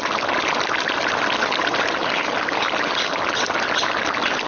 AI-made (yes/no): no